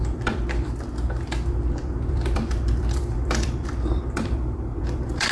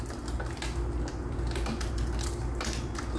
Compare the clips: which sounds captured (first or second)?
second